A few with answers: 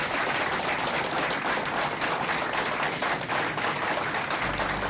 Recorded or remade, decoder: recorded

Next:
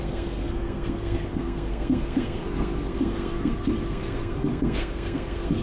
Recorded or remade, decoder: remade, codec, SNAC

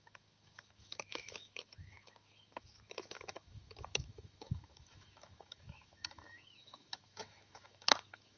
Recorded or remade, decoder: remade, autoencoder, DAC-VAE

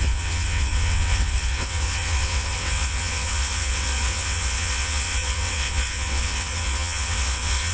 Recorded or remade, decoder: remade, vocoder, WaveNeXt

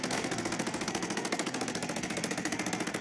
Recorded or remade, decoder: remade, codec, SNAC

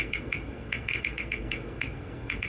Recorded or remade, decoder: remade, codec, SNAC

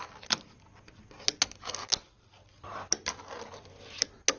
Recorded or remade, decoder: recorded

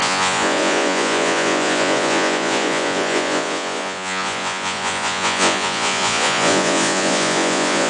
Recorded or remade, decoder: remade, vocoder, Vocos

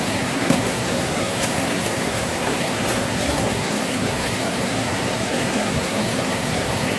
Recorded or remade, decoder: remade, codec, SNAC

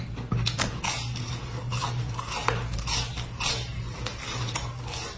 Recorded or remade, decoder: recorded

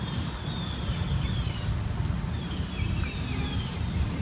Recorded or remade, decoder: recorded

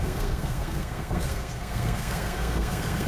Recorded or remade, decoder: remade, codec, SNAC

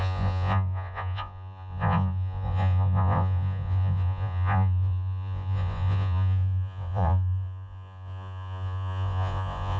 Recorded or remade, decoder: remade, vocoder, Vocos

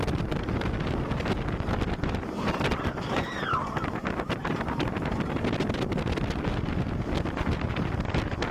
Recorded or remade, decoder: recorded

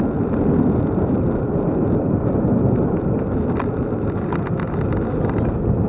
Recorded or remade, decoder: recorded